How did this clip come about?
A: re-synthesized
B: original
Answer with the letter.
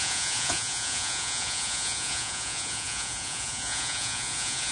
A